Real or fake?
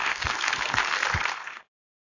fake